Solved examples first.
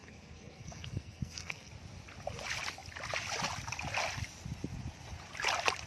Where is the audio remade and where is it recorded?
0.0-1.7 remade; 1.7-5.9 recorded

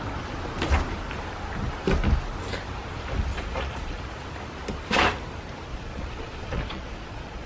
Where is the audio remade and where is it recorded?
0.0-3.3 recorded; 3.3-4.0 remade; 4.0-5.7 recorded; 5.7-7.5 remade

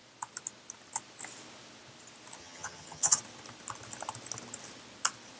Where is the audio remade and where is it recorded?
0.0-2.4 recorded; 2.4-3.2 remade; 3.2-5.4 recorded

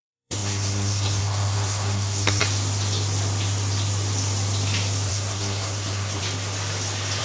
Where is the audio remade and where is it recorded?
0.0-2.4 remade; 2.4-5.1 recorded; 5.1-6.2 remade; 6.2-7.2 recorded